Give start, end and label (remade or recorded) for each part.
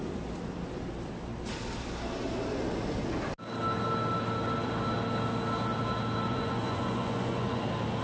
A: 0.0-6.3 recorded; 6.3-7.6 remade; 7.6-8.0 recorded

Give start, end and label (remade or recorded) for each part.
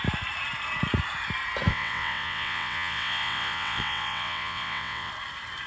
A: 0.0-1.7 recorded; 1.7-5.1 remade; 5.1-5.7 recorded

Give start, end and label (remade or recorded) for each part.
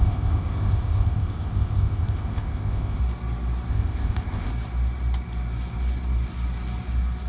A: 0.0-3.0 remade; 3.0-3.7 recorded; 3.7-4.5 remade; 4.5-7.3 recorded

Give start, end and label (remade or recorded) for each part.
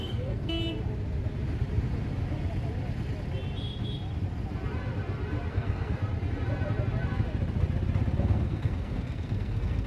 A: 0.0-0.6 remade; 0.6-5.5 recorded; 5.5-6.0 remade; 6.0-8.2 recorded; 8.2-9.9 remade